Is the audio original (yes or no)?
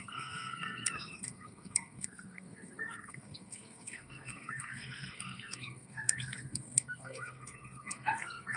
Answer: no